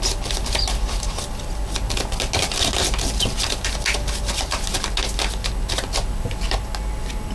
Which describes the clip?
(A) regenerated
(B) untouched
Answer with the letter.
B